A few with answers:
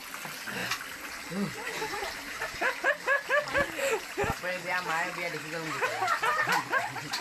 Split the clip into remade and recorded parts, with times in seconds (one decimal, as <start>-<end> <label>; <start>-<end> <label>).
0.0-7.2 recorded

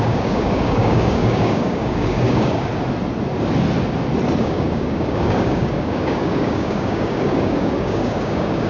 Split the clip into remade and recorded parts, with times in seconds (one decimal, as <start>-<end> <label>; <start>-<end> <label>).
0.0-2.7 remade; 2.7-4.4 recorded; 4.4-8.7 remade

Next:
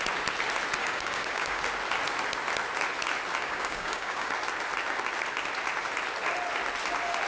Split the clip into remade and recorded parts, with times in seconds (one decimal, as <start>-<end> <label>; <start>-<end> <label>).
0.0-0.8 recorded; 0.8-1.6 remade; 1.6-3.4 recorded; 3.4-4.3 remade; 4.3-7.3 recorded

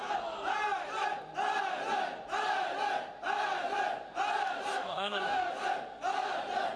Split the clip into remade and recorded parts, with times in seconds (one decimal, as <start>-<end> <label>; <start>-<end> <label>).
0.0-4.7 recorded; 4.7-5.5 remade; 5.5-6.8 recorded

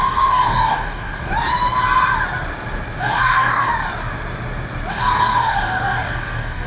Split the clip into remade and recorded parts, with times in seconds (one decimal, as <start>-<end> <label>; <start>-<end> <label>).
0.0-1.3 remade; 1.3-3.0 recorded; 3.0-3.7 remade; 3.7-4.9 recorded; 4.9-6.7 remade